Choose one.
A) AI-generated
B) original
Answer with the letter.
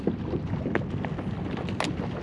B